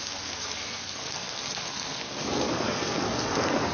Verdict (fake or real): fake